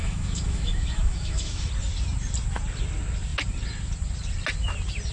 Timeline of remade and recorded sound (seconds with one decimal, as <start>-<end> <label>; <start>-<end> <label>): 0.0-1.7 remade; 1.7-5.1 recorded